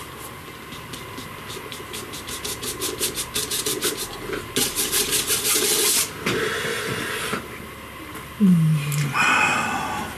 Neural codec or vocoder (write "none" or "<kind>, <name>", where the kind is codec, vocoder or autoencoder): none